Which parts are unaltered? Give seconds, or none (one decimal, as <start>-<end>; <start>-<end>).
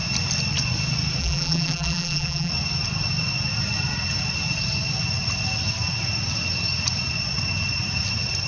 0.0-1.2; 2.5-8.5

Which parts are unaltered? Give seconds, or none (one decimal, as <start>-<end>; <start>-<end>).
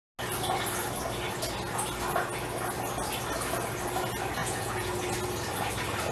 0.0-4.4; 4.9-6.1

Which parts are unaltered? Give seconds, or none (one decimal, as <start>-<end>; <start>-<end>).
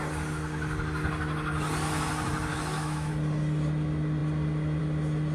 0.0-2.5; 3.1-5.3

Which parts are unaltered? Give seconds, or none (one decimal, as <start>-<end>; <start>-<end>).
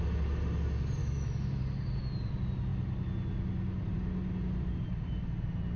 0.0-1.0; 1.6-5.8